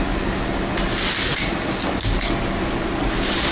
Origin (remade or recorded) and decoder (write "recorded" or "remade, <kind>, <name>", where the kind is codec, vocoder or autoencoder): recorded